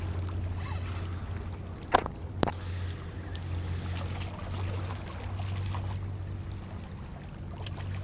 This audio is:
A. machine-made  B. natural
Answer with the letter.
B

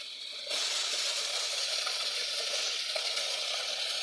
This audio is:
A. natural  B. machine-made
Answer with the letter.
B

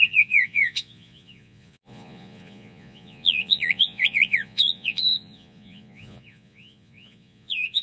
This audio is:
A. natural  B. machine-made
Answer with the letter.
B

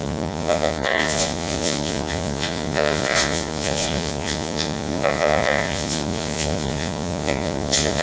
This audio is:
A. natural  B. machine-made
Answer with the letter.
B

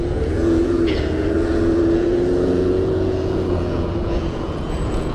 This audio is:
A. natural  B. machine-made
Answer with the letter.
B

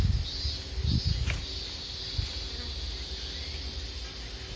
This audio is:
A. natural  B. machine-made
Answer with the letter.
A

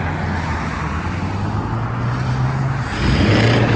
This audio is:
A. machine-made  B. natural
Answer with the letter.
B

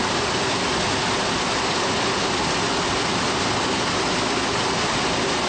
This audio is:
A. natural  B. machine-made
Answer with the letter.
A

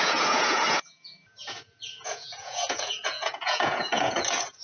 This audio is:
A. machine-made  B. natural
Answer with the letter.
A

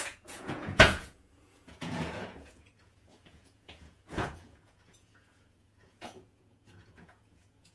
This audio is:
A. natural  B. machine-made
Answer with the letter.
B